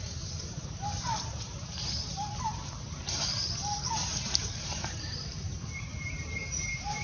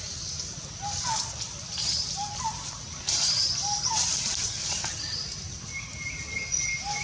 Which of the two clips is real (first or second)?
second